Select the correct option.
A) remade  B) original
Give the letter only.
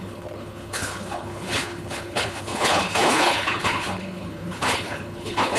A